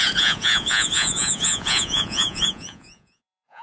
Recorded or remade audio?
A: remade